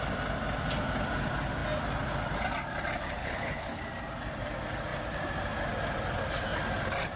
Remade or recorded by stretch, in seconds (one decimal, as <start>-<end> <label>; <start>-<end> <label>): 0.0-3.2 recorded; 3.2-3.8 remade; 3.8-7.2 recorded